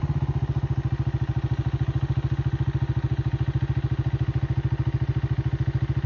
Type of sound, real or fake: real